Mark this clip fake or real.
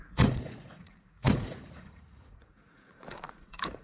fake